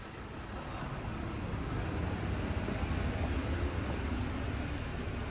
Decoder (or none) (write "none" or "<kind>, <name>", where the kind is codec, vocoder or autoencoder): none